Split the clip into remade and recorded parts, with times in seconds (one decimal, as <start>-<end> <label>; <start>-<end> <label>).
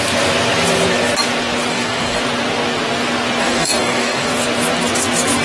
0.0-1.7 recorded; 1.7-2.2 remade; 2.2-3.4 recorded; 3.4-4.3 remade; 4.3-5.4 recorded